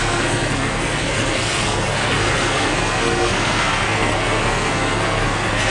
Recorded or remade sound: remade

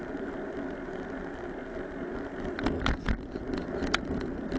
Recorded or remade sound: recorded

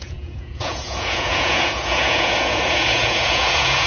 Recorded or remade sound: remade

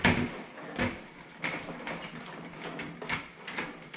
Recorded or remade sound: recorded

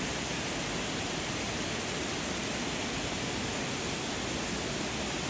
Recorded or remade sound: recorded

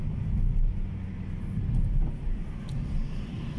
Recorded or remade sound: recorded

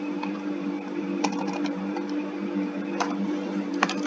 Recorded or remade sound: remade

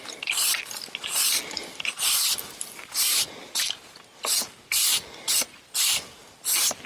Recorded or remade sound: recorded